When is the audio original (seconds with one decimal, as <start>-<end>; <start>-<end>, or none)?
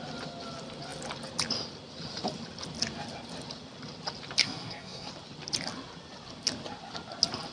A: 0.0-4.4; 5.1-7.5